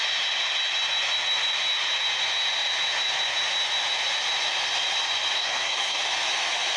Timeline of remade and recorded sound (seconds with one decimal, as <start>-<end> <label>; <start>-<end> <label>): 0.0-5.4 recorded; 5.4-6.0 remade; 6.0-6.8 recorded